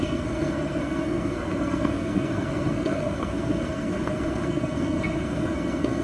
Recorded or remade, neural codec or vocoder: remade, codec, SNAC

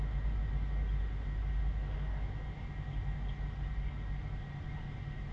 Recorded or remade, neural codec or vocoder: recorded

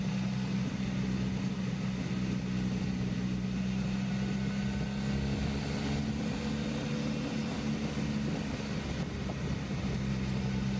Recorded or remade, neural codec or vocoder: recorded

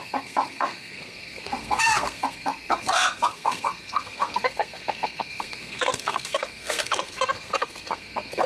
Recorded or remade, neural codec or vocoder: remade, codec, SNAC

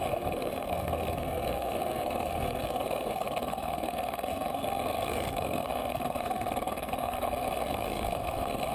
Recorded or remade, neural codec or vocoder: remade, codec, SNAC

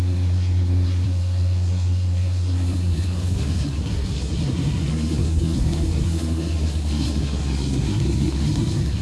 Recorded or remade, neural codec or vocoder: remade, codec, SNAC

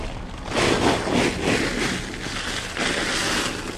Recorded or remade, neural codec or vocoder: recorded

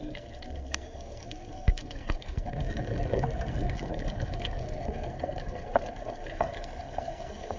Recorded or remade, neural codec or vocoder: remade, codec, SNAC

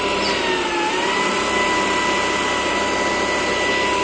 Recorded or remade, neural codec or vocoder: recorded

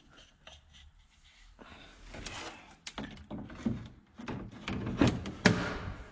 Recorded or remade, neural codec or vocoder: recorded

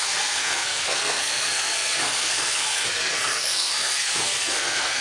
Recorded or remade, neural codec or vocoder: remade, codec, SNAC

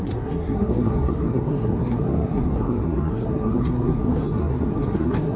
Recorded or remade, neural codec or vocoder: remade, codec, SNAC